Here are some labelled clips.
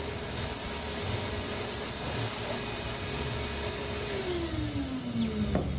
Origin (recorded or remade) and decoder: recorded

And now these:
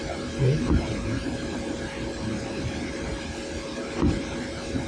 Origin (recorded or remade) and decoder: recorded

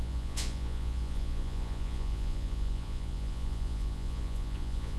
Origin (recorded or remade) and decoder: remade, vocoder, Vocos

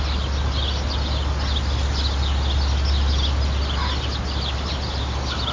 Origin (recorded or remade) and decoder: recorded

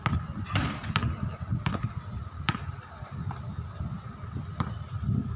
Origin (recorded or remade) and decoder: recorded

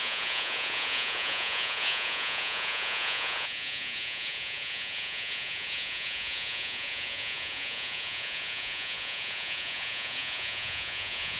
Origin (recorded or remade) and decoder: remade, vocoder, Vocos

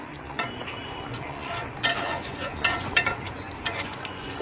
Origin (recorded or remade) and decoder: remade, vocoder, Vocos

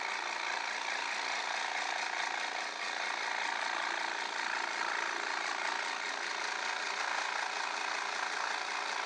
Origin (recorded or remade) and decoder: recorded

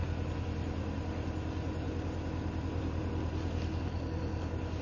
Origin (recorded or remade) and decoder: recorded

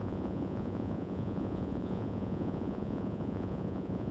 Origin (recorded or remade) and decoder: remade, vocoder, Vocos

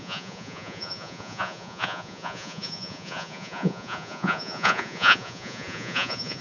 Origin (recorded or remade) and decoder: remade, vocoder, Vocos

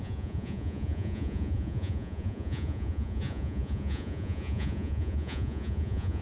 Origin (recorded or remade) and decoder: remade, vocoder, Vocos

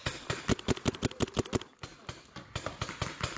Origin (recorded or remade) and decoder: recorded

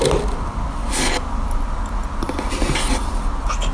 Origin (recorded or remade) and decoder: recorded